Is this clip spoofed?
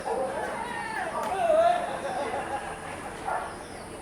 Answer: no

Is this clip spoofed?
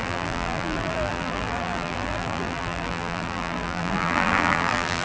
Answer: yes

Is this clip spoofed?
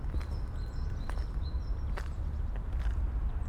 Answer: no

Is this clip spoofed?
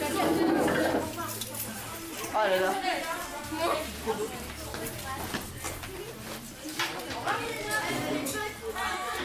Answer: no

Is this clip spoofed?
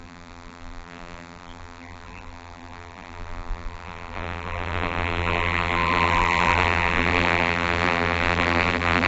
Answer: yes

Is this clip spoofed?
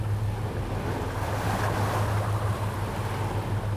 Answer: no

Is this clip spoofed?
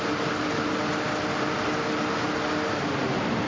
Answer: no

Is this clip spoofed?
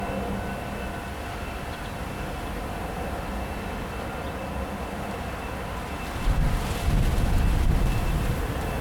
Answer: no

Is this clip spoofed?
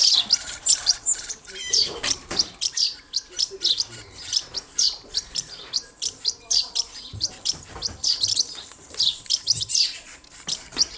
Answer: yes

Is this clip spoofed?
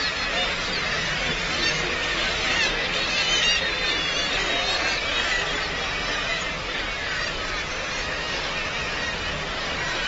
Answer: no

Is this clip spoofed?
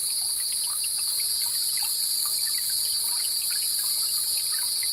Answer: yes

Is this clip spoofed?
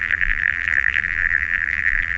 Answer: yes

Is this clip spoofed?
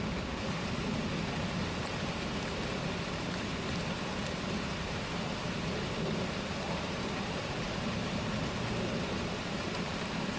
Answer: yes